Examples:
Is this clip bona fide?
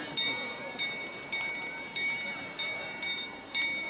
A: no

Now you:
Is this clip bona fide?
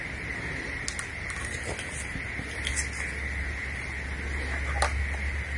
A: yes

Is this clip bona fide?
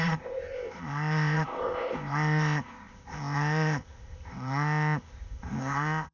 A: no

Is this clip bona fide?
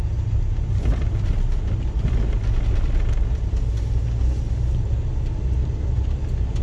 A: yes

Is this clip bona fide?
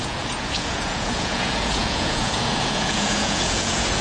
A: no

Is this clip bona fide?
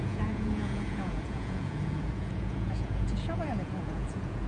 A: no